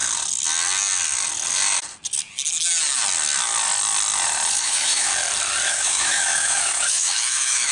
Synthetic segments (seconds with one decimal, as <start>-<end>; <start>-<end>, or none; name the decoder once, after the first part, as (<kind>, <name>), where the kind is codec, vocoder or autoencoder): 4.6-5.1 (autoencoder, DAC-VAE); 5.7-7.7